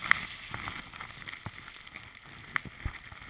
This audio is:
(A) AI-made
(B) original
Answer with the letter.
B